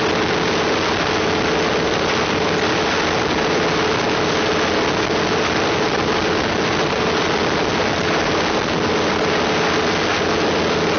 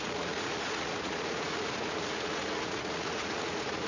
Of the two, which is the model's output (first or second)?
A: second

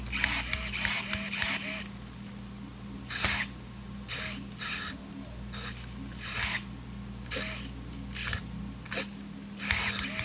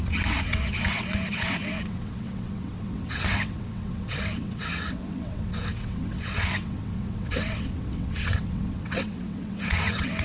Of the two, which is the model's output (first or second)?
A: second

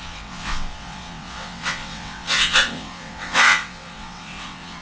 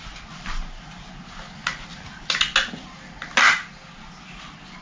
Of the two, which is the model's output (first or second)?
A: first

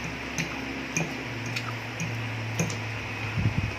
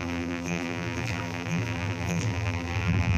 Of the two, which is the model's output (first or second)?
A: second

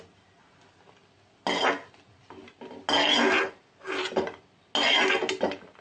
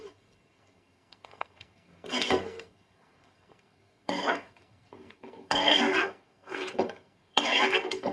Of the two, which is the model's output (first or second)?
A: second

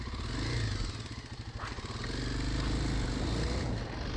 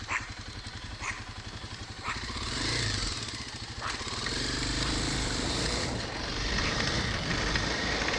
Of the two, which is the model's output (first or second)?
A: second